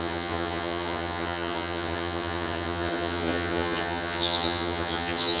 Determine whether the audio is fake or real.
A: fake